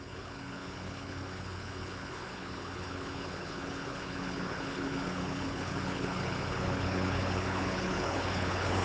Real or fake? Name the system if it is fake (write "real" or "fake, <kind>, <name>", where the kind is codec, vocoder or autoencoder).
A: fake, codec, HILCodec